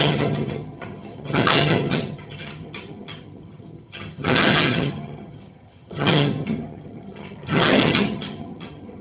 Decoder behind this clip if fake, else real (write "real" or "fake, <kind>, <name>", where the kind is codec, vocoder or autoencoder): fake, vocoder, HiFi-GAN